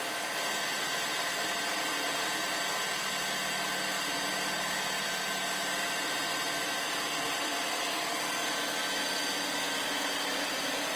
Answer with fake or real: real